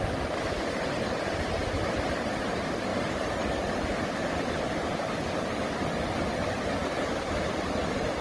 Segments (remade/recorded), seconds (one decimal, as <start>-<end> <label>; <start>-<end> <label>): 0.0-8.2 recorded